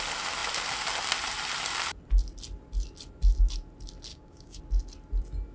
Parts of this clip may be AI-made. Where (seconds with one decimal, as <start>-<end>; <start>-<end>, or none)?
4.1-4.6

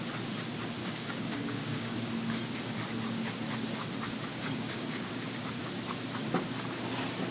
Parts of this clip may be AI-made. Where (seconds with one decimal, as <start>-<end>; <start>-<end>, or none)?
0.8-2.1; 4.3-5.1

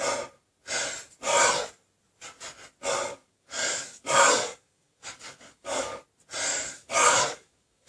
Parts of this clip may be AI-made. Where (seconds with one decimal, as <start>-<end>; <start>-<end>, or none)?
3.1-6.0; 6.5-7.9

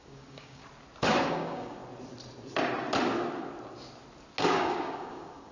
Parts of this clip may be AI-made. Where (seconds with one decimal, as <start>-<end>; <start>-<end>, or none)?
0.0-0.6; 1.3-1.8; 4.4-5.5